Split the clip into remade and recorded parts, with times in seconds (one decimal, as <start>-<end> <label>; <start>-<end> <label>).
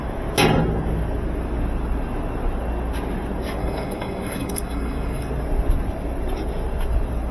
0.0-3.6 recorded; 3.6-5.3 remade; 5.3-7.3 recorded